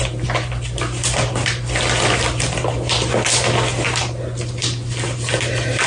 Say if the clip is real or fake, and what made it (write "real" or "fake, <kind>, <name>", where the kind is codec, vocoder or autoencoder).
real